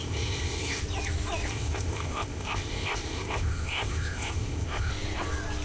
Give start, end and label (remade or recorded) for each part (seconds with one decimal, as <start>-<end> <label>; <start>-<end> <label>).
0.0-0.8 remade; 0.8-1.5 recorded; 1.5-4.9 remade; 4.9-5.6 recorded

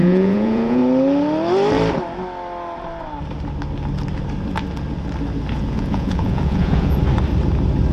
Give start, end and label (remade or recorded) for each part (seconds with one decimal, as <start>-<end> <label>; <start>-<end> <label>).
0.0-0.8 remade; 0.8-5.5 recorded; 5.5-7.0 remade; 7.0-7.9 recorded